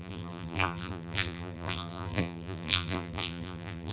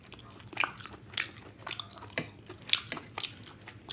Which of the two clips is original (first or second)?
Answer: second